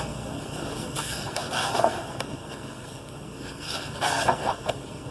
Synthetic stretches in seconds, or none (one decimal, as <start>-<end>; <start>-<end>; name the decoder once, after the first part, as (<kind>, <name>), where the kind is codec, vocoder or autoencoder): 0.0-5.1 (codec, SNAC)